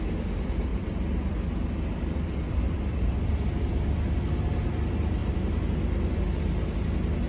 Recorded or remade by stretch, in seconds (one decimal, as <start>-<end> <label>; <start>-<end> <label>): 0.0-0.7 recorded; 0.7-3.3 remade; 3.3-5.2 recorded; 5.2-6.2 remade; 6.2-7.3 recorded

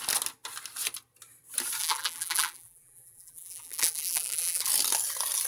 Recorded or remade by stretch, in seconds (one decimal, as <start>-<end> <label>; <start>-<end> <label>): 0.0-1.8 recorded; 1.8-4.6 remade; 4.6-5.5 recorded